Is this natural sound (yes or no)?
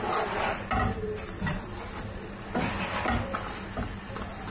yes